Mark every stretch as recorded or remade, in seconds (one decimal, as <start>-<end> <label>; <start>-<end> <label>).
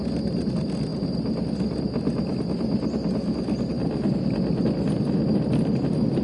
0.0-6.2 recorded